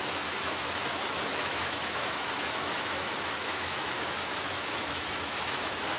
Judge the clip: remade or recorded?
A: remade